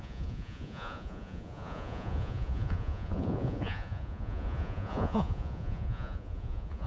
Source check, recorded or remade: remade